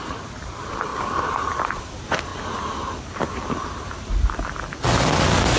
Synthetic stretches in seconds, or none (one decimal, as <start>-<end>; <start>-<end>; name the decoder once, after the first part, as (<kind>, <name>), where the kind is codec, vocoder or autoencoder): 0.9-1.8 (vocoder, BigVGAN v2)